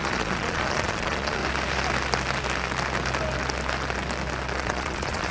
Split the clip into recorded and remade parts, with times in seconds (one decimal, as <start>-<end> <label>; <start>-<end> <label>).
0.0-1.4 remade; 1.4-4.6 recorded; 4.6-5.3 remade

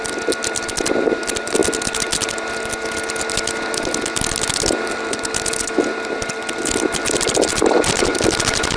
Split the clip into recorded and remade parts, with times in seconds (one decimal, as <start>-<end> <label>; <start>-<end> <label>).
0.0-8.8 recorded

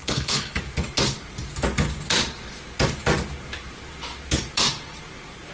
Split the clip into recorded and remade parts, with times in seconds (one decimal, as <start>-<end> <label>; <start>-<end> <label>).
0.0-0.6 remade; 0.6-5.5 recorded

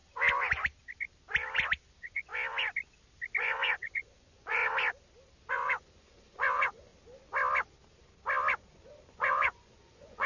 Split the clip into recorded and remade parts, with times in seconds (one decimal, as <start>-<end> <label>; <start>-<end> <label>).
0.0-1.9 recorded; 1.9-2.3 remade; 2.3-3.4 recorded; 3.4-4.6 remade; 4.6-5.5 recorded; 5.5-6.9 remade; 6.9-9.0 recorded; 9.0-10.3 remade

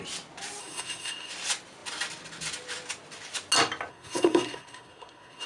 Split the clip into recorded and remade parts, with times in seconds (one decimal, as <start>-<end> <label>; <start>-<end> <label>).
0.0-0.6 recorded; 0.6-1.3 remade; 1.3-3.9 recorded; 3.9-5.5 remade

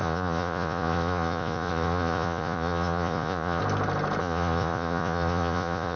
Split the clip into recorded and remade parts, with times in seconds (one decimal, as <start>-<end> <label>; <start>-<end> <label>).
0.0-3.6 remade; 3.6-4.2 recorded; 4.2-6.0 remade